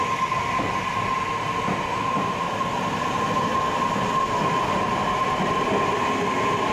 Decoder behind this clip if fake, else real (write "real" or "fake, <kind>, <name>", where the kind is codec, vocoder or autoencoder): real